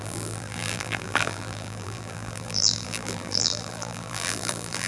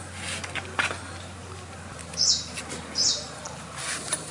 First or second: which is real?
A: second